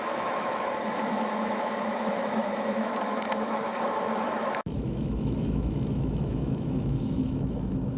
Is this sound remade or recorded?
remade